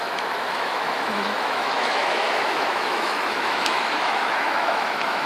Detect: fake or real fake